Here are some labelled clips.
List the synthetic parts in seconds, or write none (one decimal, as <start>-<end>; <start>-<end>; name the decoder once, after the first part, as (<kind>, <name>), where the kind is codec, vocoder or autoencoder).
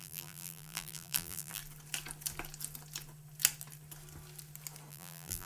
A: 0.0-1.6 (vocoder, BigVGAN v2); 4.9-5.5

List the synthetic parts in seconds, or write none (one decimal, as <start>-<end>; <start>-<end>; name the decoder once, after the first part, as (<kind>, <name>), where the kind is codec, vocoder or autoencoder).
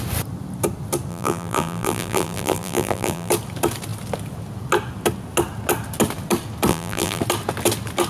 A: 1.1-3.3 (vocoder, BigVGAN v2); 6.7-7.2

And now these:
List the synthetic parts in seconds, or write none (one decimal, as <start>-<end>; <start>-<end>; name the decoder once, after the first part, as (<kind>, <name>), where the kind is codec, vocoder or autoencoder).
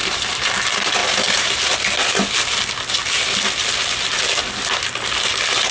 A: 0.0-0.5 (vocoder, BigVGAN v2); 1.0-1.5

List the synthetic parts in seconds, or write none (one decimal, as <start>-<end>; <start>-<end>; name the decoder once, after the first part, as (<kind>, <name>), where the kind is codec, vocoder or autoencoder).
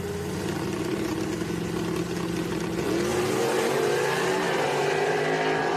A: 3.1-5.2 (vocoder, BigVGAN v2)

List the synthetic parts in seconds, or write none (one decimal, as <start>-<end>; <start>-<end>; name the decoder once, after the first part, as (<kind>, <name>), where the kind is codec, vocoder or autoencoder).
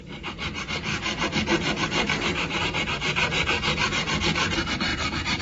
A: 0.9-2.6 (vocoder, BigVGAN v2)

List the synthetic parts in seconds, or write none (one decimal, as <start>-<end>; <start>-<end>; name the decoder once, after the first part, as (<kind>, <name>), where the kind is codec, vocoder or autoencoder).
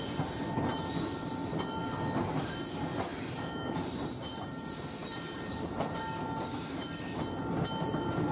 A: 0.7-1.3 (vocoder, BigVGAN v2); 3.1-6.0